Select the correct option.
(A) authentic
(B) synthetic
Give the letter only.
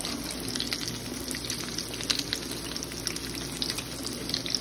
A